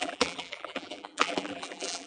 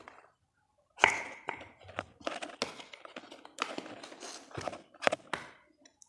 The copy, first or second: first